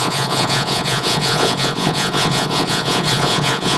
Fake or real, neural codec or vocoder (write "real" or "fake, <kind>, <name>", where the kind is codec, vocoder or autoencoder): fake, vocoder, Vocos